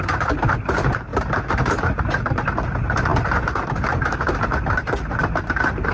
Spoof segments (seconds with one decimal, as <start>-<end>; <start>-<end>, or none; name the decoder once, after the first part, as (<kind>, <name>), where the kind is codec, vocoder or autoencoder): 0.0-5.9 (vocoder, BigVGAN v2)